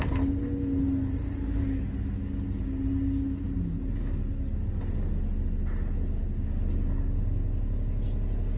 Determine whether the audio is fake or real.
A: real